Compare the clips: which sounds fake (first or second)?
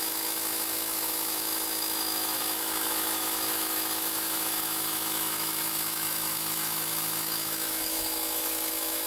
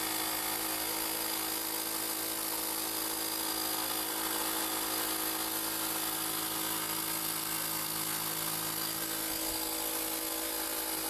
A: first